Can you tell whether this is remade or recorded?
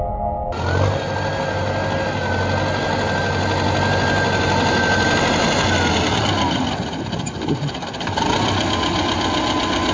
recorded